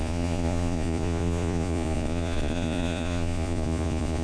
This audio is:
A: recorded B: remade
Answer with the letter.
B